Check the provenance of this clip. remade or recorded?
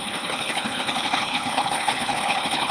remade